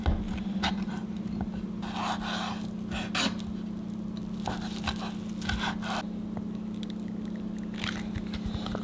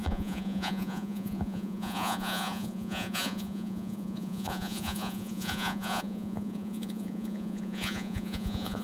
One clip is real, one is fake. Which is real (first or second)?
first